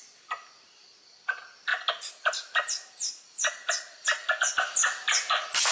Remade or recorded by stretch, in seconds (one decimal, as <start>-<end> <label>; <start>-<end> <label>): 0.0-5.7 recorded